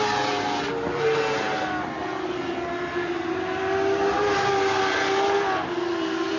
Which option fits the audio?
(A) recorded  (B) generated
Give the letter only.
A